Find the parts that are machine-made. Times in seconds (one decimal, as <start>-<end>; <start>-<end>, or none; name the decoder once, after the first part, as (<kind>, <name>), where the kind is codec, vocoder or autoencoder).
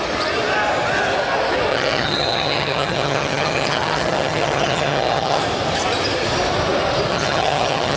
1.7-5.4 (vocoder, HiFi-GAN); 7.1-8.0